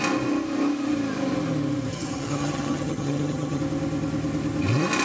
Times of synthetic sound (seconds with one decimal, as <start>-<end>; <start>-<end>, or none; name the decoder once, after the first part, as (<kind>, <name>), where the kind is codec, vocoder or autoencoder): 1.9-3.6 (vocoder, HiFi-GAN)